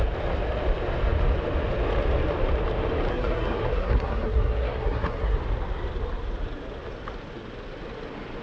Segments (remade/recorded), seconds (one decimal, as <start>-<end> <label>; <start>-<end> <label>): 0.0-3.1 recorded; 3.1-5.4 remade; 5.4-8.4 recorded